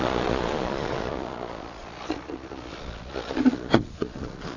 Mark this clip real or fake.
fake